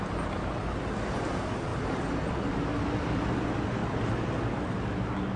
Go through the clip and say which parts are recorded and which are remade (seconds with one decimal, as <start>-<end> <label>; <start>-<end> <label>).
0.0-5.4 recorded